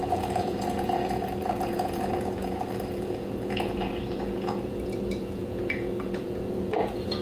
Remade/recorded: remade